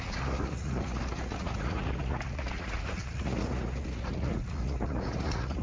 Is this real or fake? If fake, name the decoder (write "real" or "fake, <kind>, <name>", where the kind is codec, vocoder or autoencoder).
fake, vocoder, Vocos